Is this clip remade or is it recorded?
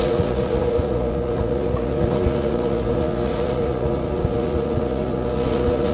remade